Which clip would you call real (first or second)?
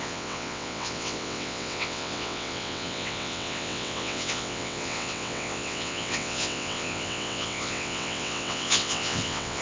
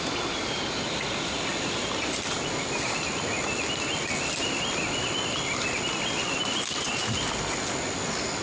second